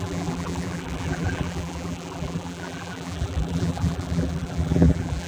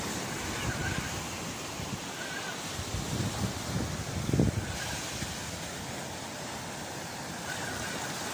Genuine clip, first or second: second